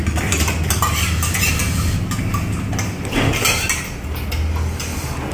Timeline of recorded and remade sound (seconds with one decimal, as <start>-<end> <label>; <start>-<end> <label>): 0.0-5.3 recorded